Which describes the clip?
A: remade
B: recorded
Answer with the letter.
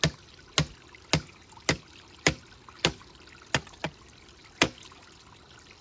B